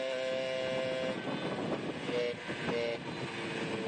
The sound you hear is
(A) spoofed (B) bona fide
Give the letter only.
B